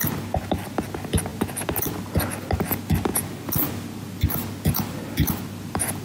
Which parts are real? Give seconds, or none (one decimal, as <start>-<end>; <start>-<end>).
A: 0.0-6.0